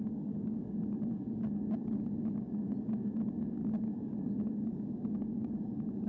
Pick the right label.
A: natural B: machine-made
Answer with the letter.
B